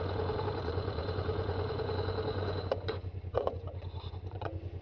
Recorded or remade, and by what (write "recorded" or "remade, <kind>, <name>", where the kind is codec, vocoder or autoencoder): remade, vocoder, Vocos